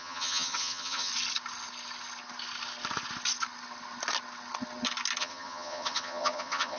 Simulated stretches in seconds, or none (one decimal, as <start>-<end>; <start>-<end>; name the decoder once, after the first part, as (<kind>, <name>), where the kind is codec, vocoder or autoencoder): 0.0-1.1 (vocoder, HiFi-GAN); 5.2-6.8